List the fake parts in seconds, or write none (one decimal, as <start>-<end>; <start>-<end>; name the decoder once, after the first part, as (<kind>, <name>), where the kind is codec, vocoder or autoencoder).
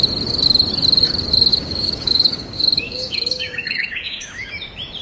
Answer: 1.5-4.5 (codec, DAC)